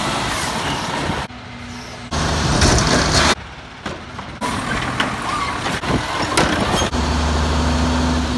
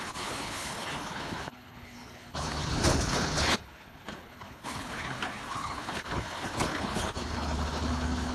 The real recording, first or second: first